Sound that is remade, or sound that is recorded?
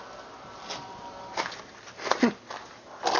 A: recorded